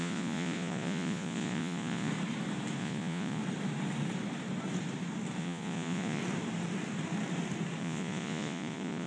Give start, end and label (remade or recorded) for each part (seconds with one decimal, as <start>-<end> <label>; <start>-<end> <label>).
0.0-2.1 remade; 2.1-2.8 recorded; 2.8-3.4 remade; 3.4-5.4 recorded; 5.4-6.2 remade; 6.2-7.8 recorded; 7.8-9.1 remade